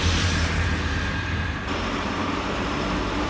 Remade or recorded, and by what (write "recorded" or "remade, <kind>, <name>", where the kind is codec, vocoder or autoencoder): remade, vocoder, BigVGAN v2